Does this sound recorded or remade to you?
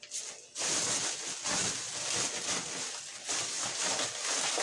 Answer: recorded